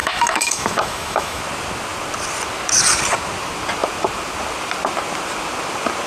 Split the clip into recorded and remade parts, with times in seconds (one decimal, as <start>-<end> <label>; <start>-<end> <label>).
0.0-1.4 remade; 1.4-6.1 recorded